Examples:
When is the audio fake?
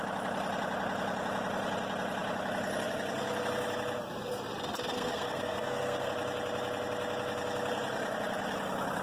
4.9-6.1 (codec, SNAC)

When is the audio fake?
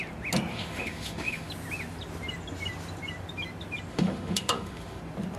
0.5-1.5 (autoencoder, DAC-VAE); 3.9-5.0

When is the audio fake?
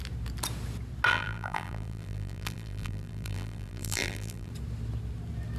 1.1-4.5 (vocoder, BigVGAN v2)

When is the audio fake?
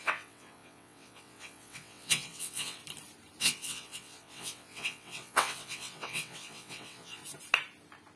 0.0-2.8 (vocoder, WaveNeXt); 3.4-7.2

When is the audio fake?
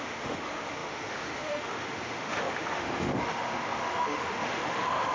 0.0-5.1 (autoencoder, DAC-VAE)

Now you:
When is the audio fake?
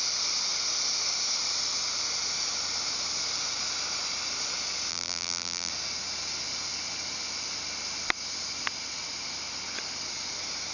4.9-5.7 (vocoder, BigVGAN v2)